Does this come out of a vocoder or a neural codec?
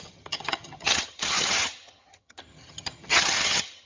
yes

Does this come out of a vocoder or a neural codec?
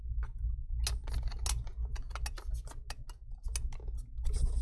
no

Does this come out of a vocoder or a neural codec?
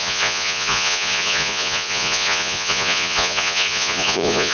yes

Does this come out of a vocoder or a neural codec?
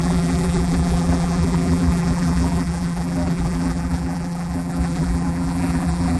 yes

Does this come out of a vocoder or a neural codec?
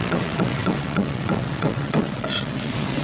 yes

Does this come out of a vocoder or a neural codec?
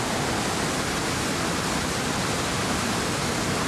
no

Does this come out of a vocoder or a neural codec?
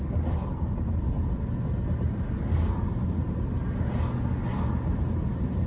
no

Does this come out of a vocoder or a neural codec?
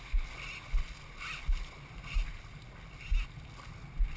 no